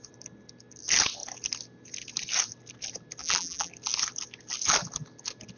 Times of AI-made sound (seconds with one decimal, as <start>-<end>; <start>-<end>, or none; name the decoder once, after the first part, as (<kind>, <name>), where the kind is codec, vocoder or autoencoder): 3.2-3.7 (vocoder, BigVGAN v2)